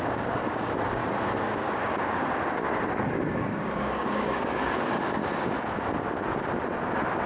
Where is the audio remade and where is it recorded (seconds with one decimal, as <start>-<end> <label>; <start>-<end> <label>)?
0.0-1.0 remade; 1.0-1.6 recorded; 1.6-2.6 remade; 2.6-3.1 recorded; 3.1-5.2 remade; 5.2-7.3 recorded